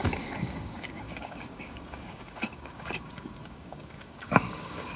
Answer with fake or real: fake